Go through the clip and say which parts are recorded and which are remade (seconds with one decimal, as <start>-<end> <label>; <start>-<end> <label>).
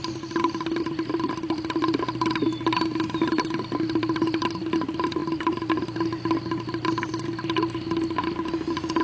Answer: 0.0-9.0 recorded